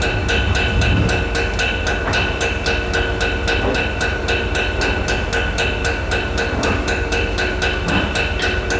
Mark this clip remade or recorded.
recorded